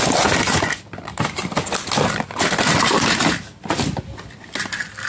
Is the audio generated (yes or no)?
no